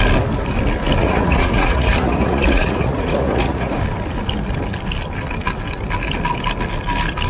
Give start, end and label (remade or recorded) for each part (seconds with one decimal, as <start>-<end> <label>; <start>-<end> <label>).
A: 0.0-1.0 recorded; 1.0-3.8 remade; 3.8-7.3 recorded